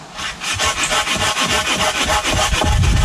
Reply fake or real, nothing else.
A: real